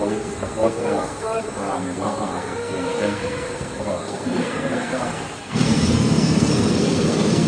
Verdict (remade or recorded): remade